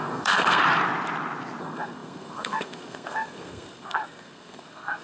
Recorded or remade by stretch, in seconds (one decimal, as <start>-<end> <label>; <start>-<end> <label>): 0.0-0.6 remade; 0.6-1.6 recorded; 1.6-5.0 remade

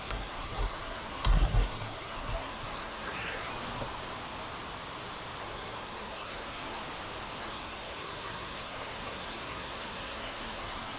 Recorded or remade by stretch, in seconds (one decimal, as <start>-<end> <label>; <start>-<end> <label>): 0.0-3.5 remade; 3.5-5.4 recorded; 5.4-6.8 remade; 6.8-7.4 recorded; 7.4-11.0 remade

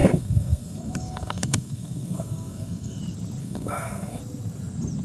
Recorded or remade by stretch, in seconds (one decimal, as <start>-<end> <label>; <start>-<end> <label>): 0.0-3.0 remade; 3.0-3.4 recorded; 3.4-4.2 remade; 4.2-5.0 recorded

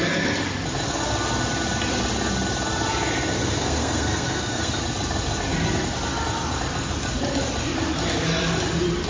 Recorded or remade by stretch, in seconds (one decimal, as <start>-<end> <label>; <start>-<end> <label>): 0.0-3.4 recorded; 3.4-4.8 remade; 4.8-9.1 recorded

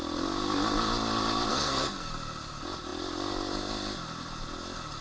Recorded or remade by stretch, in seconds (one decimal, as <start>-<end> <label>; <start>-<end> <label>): 0.0-1.5 recorded; 1.5-2.1 remade; 2.1-5.0 recorded

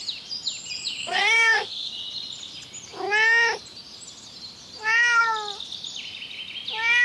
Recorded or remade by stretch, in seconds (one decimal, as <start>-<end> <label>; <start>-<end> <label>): 0.0-1.0 recorded; 1.0-1.9 remade; 1.9-7.0 recorded

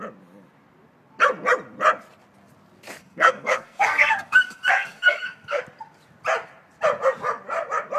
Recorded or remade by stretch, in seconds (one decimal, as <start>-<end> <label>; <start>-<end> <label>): 0.0-3.0 recorded; 3.0-5.6 remade; 5.6-8.0 recorded